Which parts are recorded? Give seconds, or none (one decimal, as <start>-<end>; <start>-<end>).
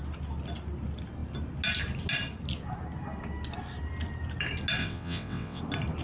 0.0-4.8; 5.6-6.0